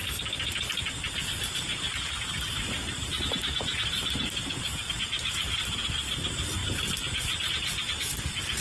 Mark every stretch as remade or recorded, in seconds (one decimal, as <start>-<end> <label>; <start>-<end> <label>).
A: 0.0-8.6 recorded